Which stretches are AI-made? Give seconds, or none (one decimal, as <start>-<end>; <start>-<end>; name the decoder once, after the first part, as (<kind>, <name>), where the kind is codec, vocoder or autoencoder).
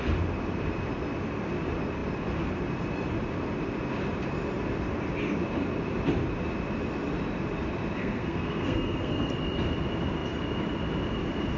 8.0-9.3 (codec, SNAC)